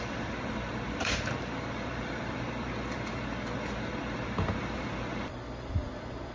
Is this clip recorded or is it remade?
remade